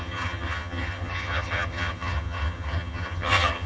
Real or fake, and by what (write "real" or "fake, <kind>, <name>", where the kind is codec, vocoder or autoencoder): fake, vocoder, HiFi-GAN